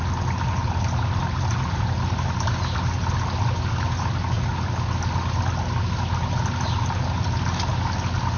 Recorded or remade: recorded